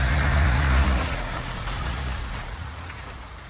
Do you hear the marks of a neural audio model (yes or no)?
yes